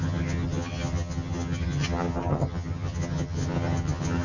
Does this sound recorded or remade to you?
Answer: remade